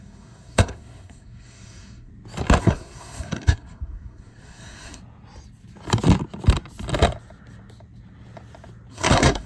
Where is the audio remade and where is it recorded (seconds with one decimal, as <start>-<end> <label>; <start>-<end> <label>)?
0.0-2.1 remade; 2.1-2.6 recorded; 2.6-5.0 remade; 5.0-8.9 recorded; 8.9-9.5 remade